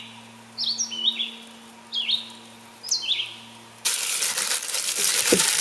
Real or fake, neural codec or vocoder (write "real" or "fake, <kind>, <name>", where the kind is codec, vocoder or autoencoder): real